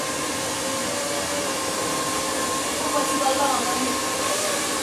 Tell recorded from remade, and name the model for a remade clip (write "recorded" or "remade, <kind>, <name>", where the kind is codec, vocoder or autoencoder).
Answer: recorded